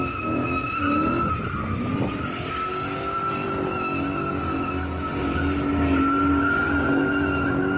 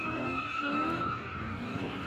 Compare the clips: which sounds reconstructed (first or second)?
second